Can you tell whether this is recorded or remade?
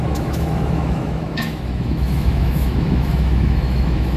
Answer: remade